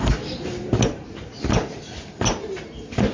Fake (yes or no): yes